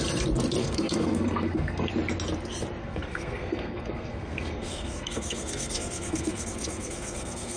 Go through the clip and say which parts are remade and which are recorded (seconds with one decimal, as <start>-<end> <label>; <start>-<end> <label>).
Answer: 0.0-0.6 recorded; 0.6-1.9 remade; 1.9-2.8 recorded; 2.8-7.6 remade